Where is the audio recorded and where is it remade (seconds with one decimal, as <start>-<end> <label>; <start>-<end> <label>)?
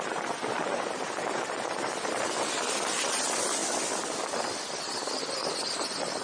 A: 0.0-3.6 recorded; 3.6-4.8 remade; 4.8-5.4 recorded; 5.4-6.2 remade